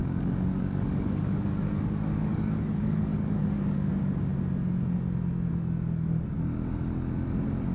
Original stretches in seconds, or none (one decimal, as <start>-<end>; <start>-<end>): 3.9-7.7